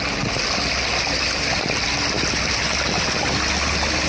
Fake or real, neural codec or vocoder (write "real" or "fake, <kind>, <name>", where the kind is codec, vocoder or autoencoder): real